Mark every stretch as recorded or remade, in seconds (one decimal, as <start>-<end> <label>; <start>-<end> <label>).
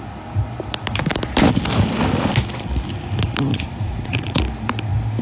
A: 0.0-3.5 recorded; 3.5-4.4 remade; 4.4-5.2 recorded